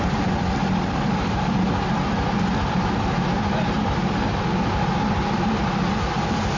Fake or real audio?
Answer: fake